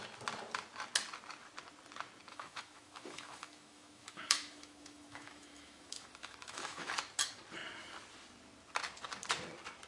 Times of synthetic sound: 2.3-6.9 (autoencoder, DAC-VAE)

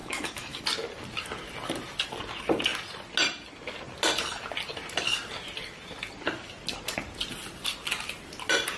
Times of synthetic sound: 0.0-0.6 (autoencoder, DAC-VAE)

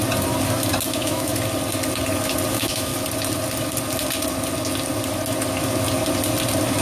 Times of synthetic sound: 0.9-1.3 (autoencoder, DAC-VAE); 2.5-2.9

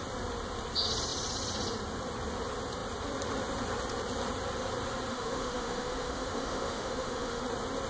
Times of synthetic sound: 5.1-7.4 (autoencoder, DAC-VAE)

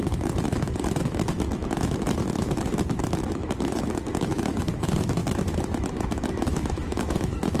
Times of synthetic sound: 0.0-7.6 (autoencoder, DAC-VAE)